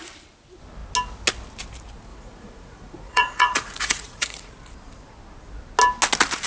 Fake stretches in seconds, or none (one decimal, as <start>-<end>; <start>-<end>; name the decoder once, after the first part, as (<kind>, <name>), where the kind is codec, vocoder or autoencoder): 2.1-4.5 (vocoder, Vocos)